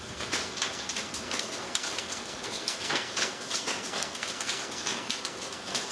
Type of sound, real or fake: fake